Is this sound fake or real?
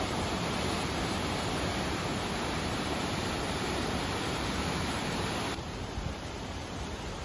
fake